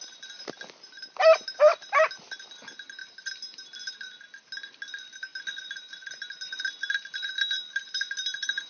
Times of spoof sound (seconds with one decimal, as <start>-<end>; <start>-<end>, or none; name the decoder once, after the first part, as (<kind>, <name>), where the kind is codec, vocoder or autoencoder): none